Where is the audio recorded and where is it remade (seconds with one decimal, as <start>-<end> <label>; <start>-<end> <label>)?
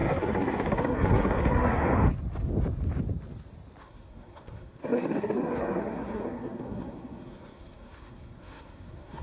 0.0-1.8 remade; 1.8-3.8 recorded; 3.8-9.2 remade